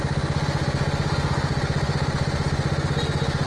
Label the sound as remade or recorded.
recorded